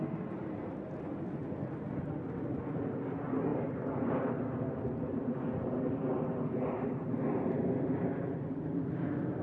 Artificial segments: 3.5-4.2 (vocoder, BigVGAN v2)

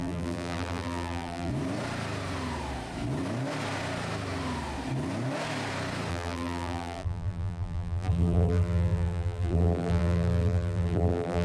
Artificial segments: 0.0-1.5 (vocoder, BigVGAN v2); 6.1-11.4

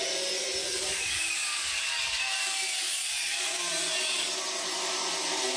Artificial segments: 0.6-3.7 (codec, DAC)

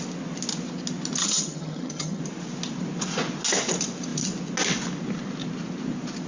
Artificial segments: 1.2-2.2 (vocoder, HiFi-GAN)

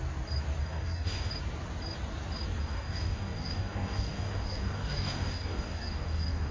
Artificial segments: 0.6-1.3 (codec, DAC); 2.6-6.5

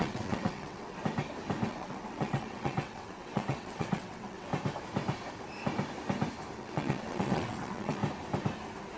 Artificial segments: 0.0-1.0 (vocoder, WaveNeXt); 1.7-4.5; 6.6-8.0

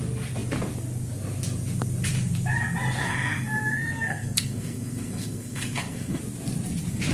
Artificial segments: 3.0-6.2 (codec, SNAC)

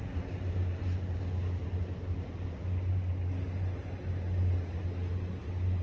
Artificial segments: none